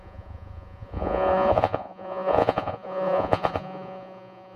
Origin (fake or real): fake